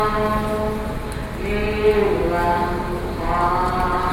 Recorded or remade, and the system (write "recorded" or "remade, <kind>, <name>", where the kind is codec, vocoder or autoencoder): recorded